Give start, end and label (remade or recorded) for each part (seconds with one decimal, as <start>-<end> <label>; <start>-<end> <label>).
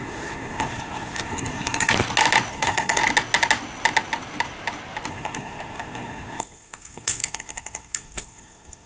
0.0-1.9 remade; 1.9-2.5 recorded; 2.5-3.0 remade; 3.0-5.1 recorded; 5.1-8.9 remade